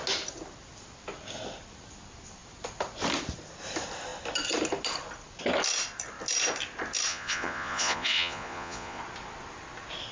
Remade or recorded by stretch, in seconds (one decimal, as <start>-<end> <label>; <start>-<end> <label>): 0.0-7.1 recorded; 7.1-9.0 remade; 9.0-10.1 recorded